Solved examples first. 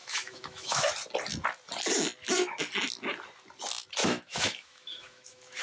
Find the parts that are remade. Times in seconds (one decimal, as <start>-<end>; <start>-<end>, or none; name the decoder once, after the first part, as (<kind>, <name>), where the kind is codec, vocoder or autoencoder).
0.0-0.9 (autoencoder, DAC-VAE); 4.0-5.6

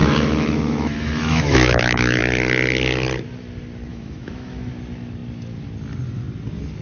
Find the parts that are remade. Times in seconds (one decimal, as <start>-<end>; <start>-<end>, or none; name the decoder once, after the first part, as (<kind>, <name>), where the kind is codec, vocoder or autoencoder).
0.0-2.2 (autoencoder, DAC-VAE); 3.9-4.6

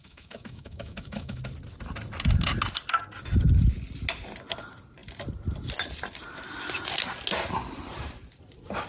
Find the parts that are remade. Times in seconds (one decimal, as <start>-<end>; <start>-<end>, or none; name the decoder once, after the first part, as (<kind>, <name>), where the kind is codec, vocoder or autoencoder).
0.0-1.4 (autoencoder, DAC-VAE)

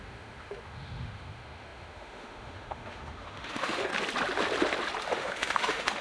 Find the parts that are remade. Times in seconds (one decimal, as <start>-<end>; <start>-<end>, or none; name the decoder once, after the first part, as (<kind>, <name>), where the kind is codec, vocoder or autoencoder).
0.0-3.9 (autoencoder, DAC-VAE); 5.0-6.0

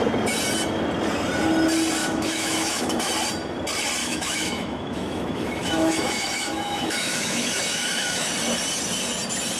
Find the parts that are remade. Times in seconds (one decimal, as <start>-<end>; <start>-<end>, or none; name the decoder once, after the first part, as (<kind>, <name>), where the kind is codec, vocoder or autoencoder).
2.0-3.1 (autoencoder, DAC-VAE); 4.0-8.3

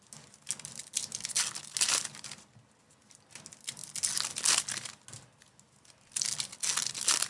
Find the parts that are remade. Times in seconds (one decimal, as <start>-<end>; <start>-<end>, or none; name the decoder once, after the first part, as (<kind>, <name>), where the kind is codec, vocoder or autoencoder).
none